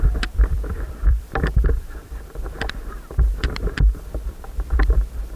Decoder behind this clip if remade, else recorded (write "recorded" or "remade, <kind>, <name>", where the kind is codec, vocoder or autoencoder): remade, vocoder, BigVGAN v2